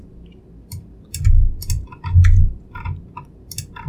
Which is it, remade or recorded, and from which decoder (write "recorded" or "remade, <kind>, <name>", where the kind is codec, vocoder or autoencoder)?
recorded